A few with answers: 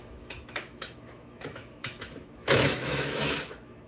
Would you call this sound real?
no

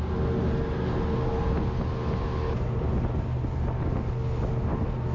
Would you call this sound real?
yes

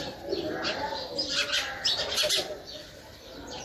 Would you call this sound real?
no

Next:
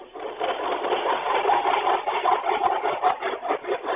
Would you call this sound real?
yes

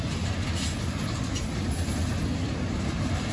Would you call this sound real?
yes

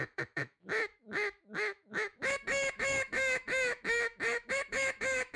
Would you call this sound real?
no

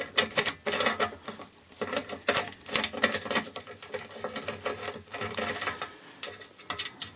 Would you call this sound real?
yes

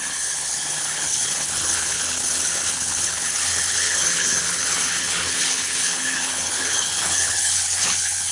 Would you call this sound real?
no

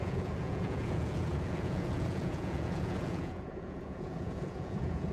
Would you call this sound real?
no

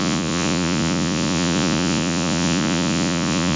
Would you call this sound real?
no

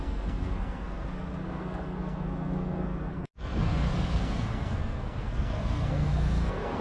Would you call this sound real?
no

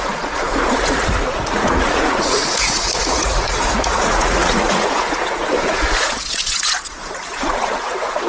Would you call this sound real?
no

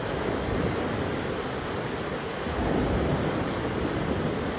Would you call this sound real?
yes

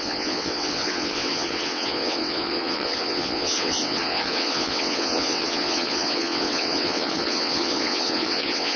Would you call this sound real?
no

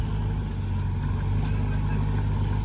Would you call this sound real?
yes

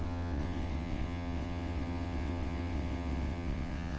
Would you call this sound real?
no